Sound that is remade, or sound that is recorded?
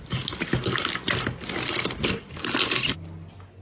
recorded